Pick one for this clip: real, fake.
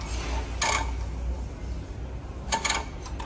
real